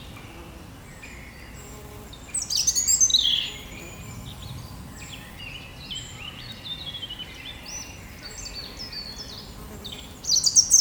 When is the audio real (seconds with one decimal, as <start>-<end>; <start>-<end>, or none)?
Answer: 0.0-5.7; 8.5-10.8